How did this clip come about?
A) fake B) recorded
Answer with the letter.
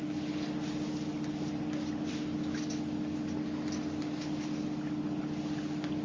B